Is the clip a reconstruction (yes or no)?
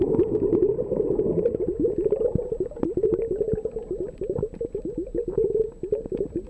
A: no